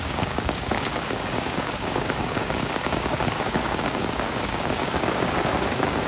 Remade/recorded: remade